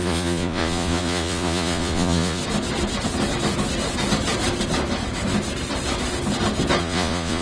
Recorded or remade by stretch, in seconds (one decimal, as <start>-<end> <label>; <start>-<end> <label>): 0.0-2.4 remade; 2.4-6.8 recorded; 6.8-7.4 remade